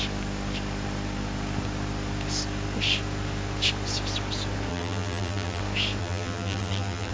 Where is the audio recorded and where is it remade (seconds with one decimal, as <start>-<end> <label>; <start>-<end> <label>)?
0.0-4.7 recorded; 4.7-5.6 remade; 5.6-6.0 recorded; 6.0-7.1 remade